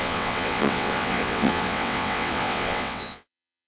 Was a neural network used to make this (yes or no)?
yes